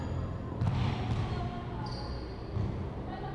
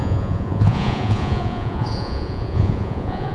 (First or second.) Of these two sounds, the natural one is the first